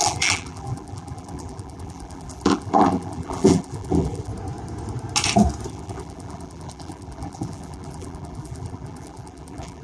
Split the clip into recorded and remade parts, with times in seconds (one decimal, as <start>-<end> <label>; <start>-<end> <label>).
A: 0.0-4.3 remade; 4.3-5.7 recorded; 5.7-9.8 remade